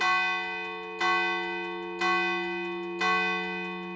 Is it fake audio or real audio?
real